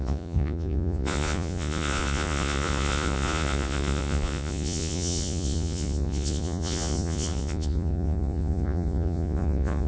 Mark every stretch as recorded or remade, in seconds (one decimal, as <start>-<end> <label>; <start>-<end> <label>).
0.0-9.9 remade